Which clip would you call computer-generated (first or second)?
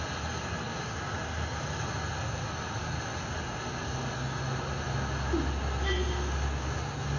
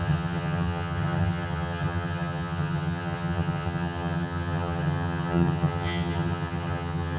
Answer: second